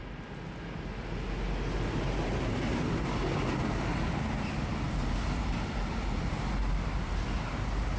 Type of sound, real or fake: real